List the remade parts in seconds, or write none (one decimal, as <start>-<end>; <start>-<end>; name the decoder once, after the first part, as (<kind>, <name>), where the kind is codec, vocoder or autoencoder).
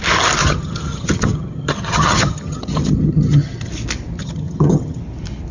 0.4-3.7 (vocoder, HiFi-GAN); 4.2-5.0